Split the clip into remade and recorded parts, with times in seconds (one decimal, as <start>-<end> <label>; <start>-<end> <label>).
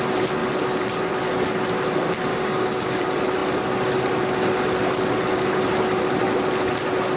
0.0-2.3 recorded; 2.3-3.0 remade; 3.0-7.2 recorded